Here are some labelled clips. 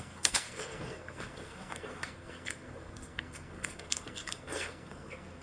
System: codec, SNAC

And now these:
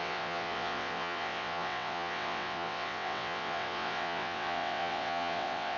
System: vocoder, WaveNeXt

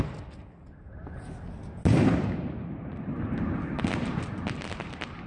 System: none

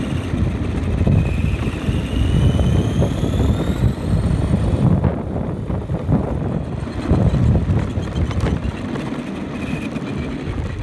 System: none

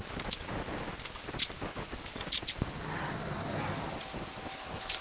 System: none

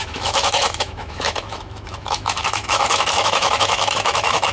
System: autoencoder, DAC-VAE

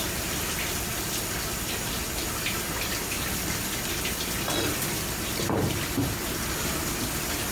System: none